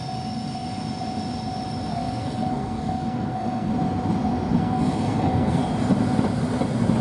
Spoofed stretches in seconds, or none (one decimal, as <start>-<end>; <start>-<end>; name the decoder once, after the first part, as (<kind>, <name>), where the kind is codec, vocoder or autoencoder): 1.9-3.7 (codec, SNAC); 4.5-5.6